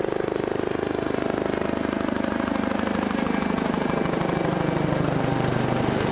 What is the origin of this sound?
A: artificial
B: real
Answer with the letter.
B